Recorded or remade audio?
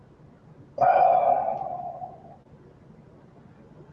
recorded